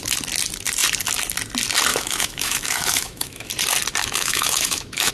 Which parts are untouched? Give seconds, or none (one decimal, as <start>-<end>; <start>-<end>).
0.0-1.9; 3.5-4.0

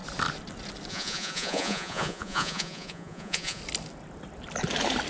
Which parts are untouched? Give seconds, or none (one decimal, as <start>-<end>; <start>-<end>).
0.0-0.9; 3.6-5.1

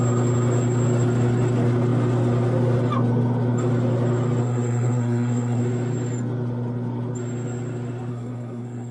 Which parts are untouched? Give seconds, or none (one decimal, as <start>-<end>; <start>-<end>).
0.0-4.4; 5.6-8.1

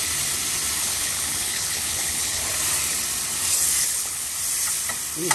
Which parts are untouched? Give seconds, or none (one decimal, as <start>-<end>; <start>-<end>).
0.0-0.8; 2.5-3.8; 4.3-5.3

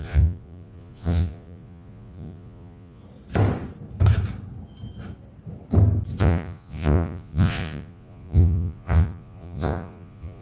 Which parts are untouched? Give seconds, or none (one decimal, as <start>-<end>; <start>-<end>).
3.0-6.2